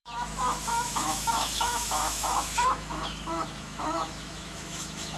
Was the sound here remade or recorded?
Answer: remade